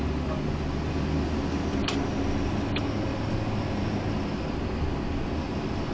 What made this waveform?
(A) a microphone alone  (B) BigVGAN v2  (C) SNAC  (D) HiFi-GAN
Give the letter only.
A